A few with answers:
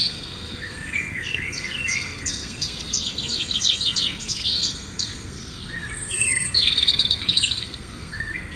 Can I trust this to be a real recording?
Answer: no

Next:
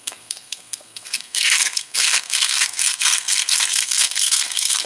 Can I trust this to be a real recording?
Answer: no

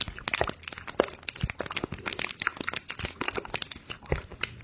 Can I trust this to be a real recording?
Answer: yes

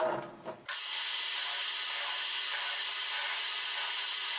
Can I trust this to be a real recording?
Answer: yes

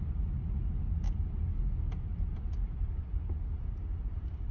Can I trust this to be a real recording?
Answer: yes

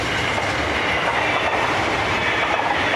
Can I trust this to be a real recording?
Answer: yes